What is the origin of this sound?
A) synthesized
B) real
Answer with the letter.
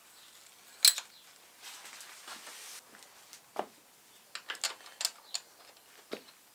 B